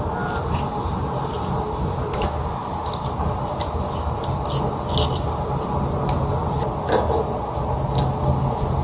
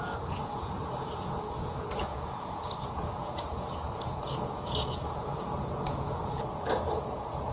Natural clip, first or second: first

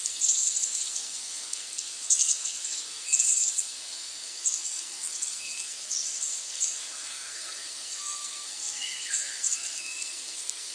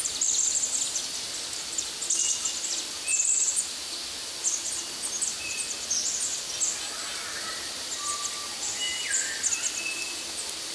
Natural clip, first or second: second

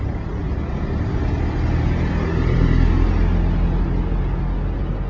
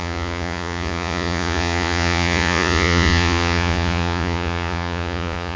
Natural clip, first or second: first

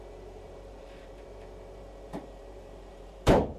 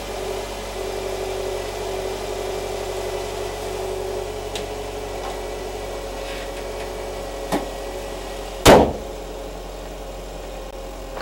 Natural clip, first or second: second